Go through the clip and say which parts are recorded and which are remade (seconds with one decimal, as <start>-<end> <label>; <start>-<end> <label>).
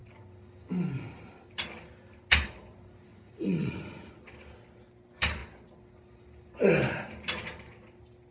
0.0-3.1 recorded; 3.1-4.1 remade; 4.1-8.3 recorded